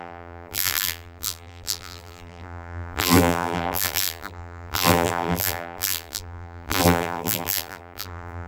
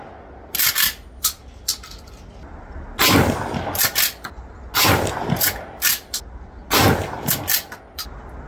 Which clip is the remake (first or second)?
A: first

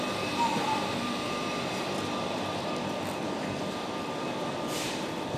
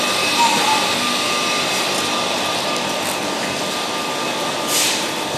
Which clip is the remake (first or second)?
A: first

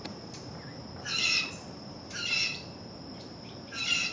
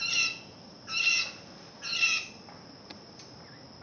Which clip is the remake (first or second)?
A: first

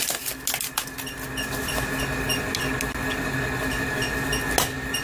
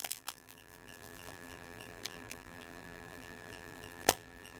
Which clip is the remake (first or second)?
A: second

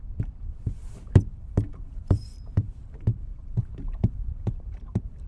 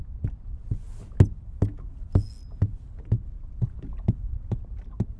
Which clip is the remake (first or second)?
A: first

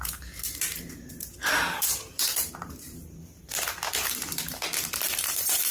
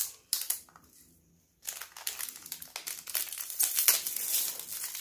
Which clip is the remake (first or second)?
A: first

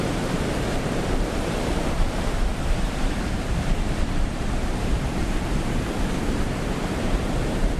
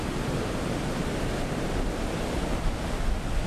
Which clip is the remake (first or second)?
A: first